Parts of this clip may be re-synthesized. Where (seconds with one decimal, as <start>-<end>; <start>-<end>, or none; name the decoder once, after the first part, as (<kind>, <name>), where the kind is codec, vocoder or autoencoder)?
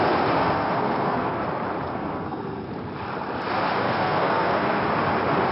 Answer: 0.4-1.4 (codec, SNAC); 1.9-2.7; 3.8-4.8